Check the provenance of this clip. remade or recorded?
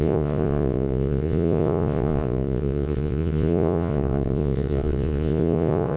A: remade